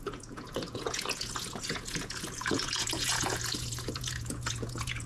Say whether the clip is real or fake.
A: fake